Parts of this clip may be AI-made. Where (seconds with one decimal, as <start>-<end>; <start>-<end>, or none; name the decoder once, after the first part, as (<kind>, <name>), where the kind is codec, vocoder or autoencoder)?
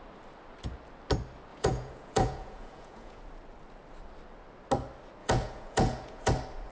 1.5-3.2 (vocoder, Vocos); 5.2-6.3